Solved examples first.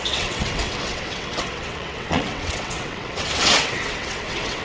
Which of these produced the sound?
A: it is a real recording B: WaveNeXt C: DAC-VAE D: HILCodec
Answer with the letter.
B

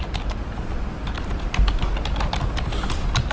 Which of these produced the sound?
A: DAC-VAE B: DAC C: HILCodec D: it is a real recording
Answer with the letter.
D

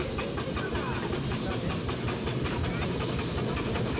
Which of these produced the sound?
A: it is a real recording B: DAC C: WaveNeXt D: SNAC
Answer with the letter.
A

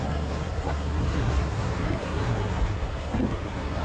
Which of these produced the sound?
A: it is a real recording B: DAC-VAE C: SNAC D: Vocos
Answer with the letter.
C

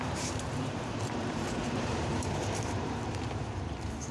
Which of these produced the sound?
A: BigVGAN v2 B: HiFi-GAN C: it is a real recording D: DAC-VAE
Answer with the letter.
A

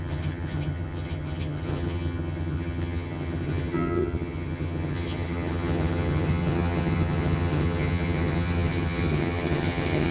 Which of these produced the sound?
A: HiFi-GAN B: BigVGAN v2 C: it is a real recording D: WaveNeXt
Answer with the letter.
A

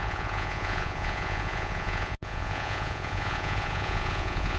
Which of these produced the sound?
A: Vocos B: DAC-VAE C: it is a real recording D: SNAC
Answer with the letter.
A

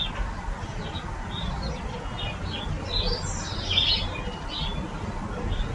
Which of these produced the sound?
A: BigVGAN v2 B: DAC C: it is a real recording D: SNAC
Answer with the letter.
C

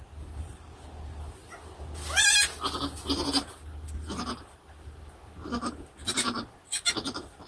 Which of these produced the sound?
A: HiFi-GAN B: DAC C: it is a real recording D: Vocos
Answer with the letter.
C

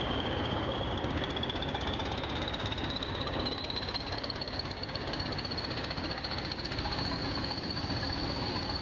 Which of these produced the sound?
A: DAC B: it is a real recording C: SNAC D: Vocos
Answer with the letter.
A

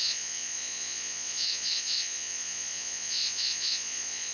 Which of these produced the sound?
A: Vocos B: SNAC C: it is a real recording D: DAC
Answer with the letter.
A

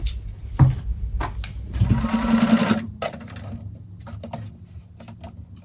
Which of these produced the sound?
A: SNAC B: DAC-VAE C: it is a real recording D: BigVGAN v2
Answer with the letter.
C